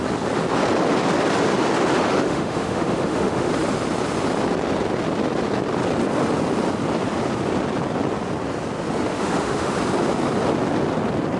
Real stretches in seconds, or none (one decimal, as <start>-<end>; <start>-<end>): 0.0-2.1; 3.5-9.1; 9.7-11.4